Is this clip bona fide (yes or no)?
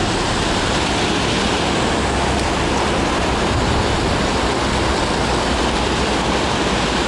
yes